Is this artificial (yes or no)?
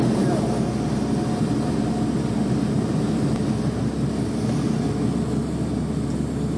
no